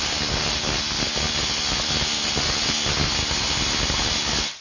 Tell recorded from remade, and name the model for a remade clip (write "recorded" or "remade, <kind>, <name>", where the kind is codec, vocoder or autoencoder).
recorded